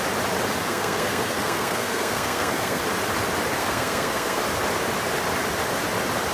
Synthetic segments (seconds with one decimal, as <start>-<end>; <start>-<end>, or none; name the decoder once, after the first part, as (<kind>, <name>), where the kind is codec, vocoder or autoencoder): 0.7-2.8 (codec, SNAC); 3.6-4.4